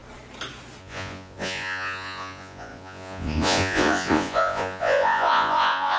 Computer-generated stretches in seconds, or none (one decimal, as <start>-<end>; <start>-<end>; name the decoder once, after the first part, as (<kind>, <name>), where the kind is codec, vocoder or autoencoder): 0.8-6.0 (vocoder, Vocos)